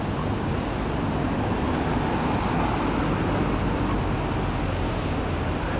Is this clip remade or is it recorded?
recorded